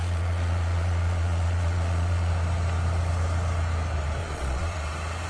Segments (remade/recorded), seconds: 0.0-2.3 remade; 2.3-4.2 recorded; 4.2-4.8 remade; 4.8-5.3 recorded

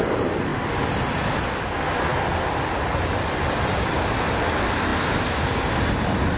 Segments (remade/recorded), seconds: 0.0-6.4 recorded

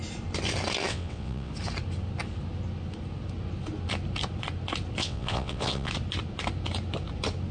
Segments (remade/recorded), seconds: 0.0-0.9 recorded; 0.9-1.5 remade; 1.5-5.0 recorded; 5.0-5.9 remade; 5.9-7.5 recorded

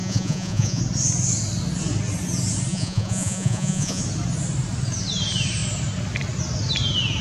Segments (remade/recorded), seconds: 0.0-0.8 remade; 0.8-2.7 recorded; 2.7-4.0 remade; 4.0-7.2 recorded

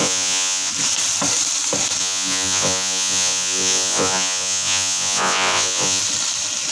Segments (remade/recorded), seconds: 0.0-0.7 remade; 0.7-2.0 recorded; 2.0-6.0 remade; 6.0-6.7 recorded

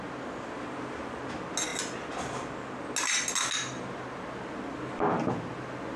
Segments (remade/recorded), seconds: 0.0-6.0 recorded